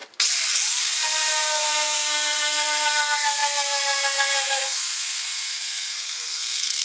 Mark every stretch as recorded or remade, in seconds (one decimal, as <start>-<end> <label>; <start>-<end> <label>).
0.0-0.8 recorded; 0.8-6.8 remade